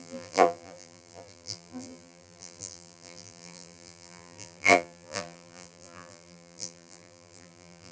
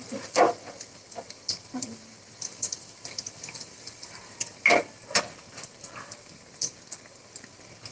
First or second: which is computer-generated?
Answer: first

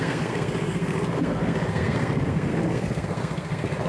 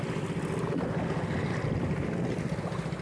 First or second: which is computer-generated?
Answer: first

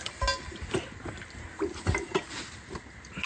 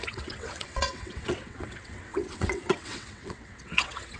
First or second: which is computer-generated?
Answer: second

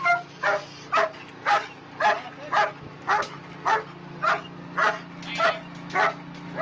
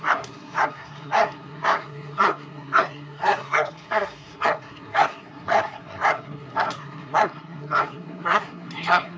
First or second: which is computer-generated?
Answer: second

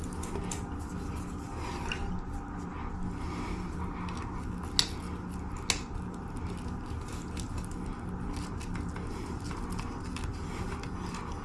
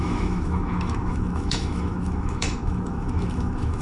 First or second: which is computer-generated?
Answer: second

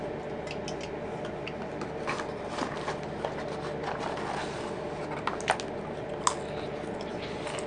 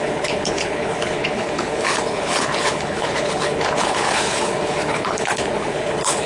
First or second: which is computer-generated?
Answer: second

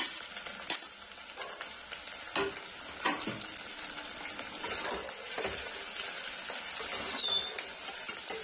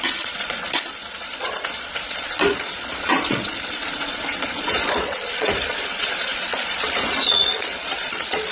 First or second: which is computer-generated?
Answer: second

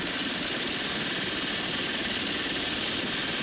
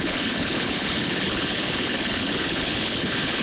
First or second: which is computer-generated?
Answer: second